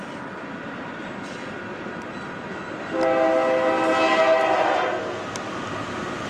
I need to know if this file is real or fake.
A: real